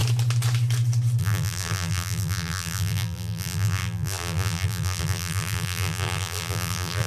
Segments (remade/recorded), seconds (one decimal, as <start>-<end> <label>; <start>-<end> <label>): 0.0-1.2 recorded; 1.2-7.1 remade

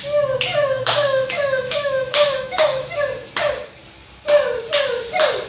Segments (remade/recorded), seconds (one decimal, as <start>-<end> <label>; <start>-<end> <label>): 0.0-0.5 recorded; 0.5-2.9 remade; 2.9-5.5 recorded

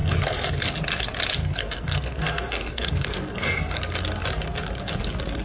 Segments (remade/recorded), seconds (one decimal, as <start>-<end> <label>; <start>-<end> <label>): 0.0-0.7 remade; 0.7-1.4 recorded; 1.4-3.8 remade; 3.8-5.4 recorded